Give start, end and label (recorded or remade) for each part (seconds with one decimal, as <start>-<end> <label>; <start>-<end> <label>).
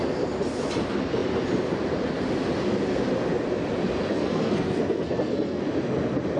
0.0-4.1 recorded; 4.1-5.6 remade; 5.6-6.4 recorded